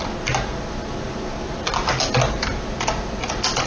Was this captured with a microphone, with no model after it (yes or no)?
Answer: yes